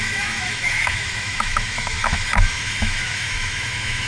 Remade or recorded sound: remade